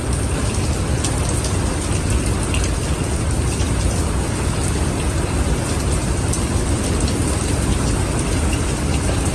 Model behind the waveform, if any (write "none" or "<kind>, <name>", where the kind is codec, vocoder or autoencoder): none